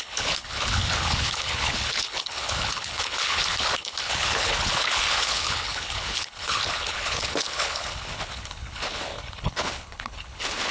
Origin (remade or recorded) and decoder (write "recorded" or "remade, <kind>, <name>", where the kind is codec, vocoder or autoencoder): remade, codec, HILCodec